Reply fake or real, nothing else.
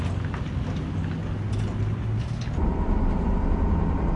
real